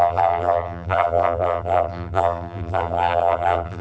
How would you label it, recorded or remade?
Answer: remade